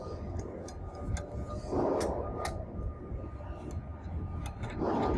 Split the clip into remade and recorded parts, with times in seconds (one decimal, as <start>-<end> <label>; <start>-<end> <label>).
0.0-5.2 recorded